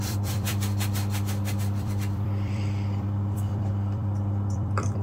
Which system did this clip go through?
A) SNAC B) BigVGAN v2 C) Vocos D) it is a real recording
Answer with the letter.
B